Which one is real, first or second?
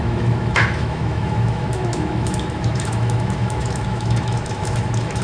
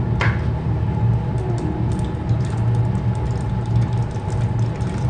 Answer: second